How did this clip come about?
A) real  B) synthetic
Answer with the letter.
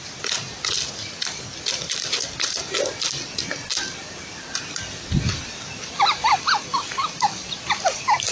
B